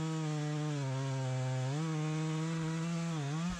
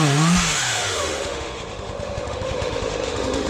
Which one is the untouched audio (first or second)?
first